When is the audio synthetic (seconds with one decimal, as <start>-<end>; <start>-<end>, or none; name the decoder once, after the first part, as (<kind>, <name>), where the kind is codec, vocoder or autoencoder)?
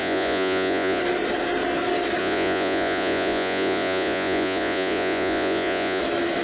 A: 0.0-1.0 (vocoder, Vocos); 2.2-6.0